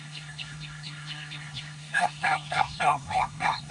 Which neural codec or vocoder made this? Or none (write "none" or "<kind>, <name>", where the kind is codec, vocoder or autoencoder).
codec, SNAC